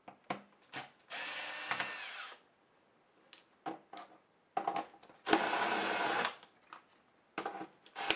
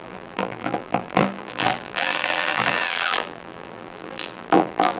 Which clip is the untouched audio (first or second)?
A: first